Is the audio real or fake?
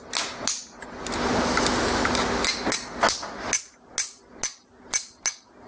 real